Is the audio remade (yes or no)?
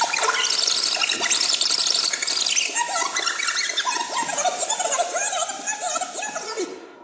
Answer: no